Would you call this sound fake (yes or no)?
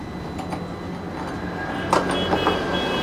no